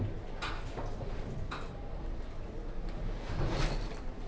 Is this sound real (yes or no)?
yes